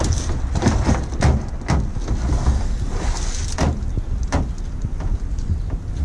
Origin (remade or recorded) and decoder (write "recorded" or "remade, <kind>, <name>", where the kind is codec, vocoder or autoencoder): recorded